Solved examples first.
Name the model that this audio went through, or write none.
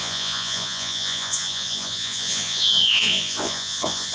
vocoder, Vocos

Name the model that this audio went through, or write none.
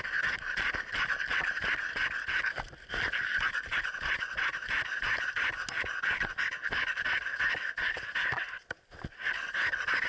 none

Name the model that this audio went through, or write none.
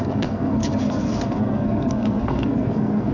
codec, SNAC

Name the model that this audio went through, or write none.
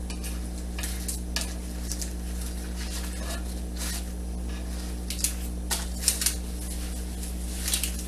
none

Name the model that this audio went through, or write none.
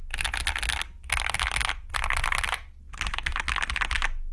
none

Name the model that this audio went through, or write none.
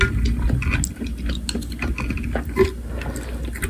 none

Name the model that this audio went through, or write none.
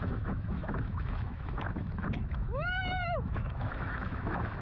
autoencoder, DAC-VAE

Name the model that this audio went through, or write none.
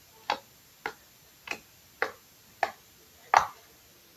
none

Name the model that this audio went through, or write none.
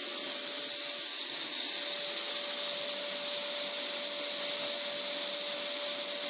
none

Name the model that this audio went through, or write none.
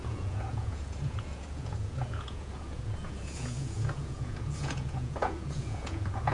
vocoder, Vocos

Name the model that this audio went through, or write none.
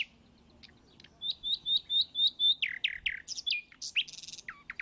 none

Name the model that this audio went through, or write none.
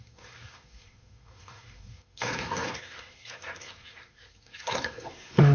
codec, SNAC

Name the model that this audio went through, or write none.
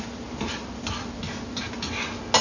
none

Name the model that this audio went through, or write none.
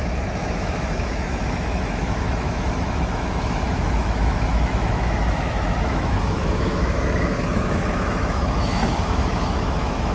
autoencoder, DAC-VAE